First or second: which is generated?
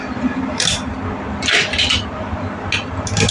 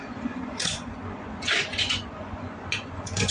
second